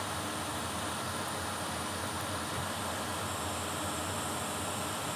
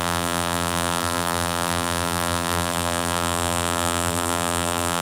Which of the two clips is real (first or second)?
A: first